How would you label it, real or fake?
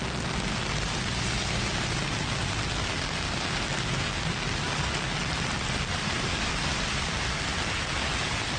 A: real